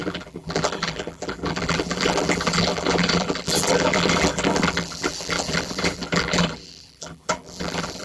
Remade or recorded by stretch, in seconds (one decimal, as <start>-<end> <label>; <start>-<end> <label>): 0.0-8.0 remade